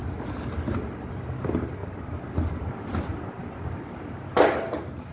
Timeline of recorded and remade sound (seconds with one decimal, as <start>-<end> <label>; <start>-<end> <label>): 0.0-5.1 recorded